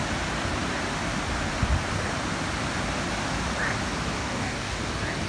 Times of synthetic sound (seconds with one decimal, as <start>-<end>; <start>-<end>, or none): 4.2-4.8